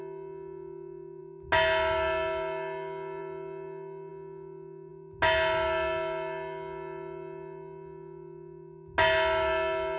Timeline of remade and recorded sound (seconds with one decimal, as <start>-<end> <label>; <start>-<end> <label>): 0.0-10.0 recorded